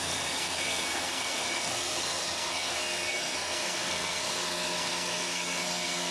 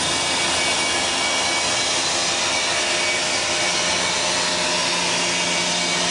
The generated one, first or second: first